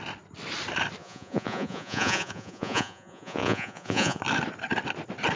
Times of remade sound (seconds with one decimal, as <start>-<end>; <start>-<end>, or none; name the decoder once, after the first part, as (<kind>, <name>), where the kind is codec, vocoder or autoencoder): 1.0-4.2 (vocoder, Vocos)